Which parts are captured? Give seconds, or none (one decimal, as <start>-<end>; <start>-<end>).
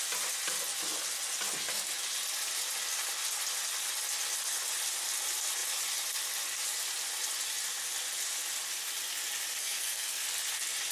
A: 0.0-9.6; 10.2-10.9